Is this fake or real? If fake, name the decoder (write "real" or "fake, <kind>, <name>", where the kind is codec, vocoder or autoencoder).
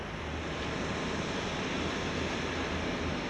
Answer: real